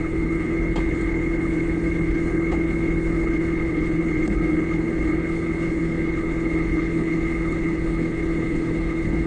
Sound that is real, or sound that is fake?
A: fake